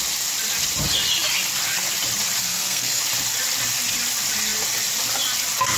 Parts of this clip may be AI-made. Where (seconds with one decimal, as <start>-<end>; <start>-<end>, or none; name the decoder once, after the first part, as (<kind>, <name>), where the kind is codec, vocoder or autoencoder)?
2.4-3.0 (codec, SNAC)